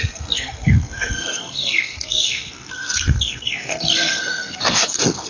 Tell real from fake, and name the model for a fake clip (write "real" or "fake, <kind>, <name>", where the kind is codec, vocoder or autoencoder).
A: fake, codec, SNAC